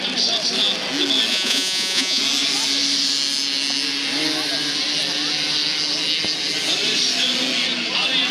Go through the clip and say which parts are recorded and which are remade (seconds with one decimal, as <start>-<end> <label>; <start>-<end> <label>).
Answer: 0.0-1.3 recorded; 1.3-2.2 remade; 2.2-8.3 recorded